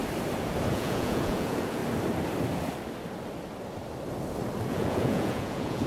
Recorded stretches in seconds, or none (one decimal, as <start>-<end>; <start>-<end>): 0.0-0.7; 1.8-4.7